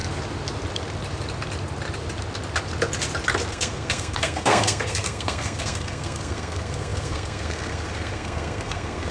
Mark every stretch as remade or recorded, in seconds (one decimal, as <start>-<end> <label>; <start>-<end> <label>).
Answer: 0.0-3.5 recorded; 3.5-9.1 remade